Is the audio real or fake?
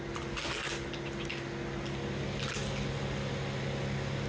real